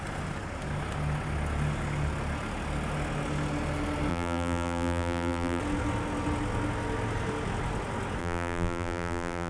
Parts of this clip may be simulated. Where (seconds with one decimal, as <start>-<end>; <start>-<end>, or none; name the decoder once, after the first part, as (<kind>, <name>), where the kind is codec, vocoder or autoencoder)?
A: 4.1-5.6 (vocoder, BigVGAN v2); 8.2-9.5